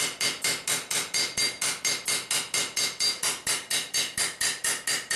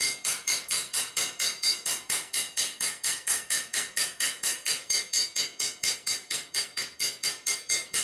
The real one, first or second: first